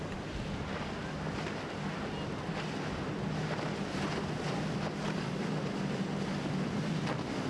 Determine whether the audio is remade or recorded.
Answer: recorded